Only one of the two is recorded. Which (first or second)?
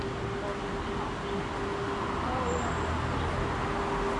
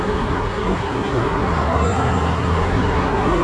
first